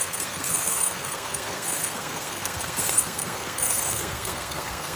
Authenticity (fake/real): fake